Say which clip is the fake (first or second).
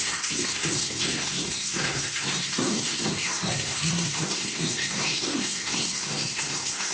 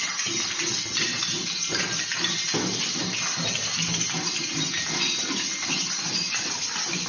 first